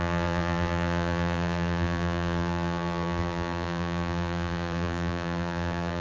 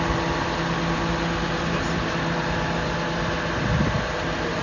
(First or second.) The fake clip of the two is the first